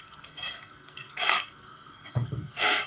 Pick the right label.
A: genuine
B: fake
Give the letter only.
B